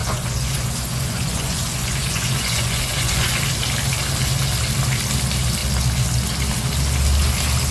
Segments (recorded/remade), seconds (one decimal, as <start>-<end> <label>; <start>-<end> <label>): 0.0-3.4 remade; 3.4-7.7 recorded